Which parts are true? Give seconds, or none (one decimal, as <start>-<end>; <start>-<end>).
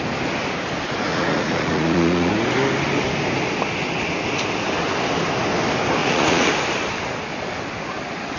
0.0-1.1; 2.3-6.0; 6.5-8.4